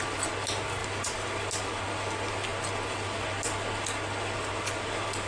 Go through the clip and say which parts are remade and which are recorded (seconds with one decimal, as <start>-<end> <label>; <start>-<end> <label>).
0.0-5.3 recorded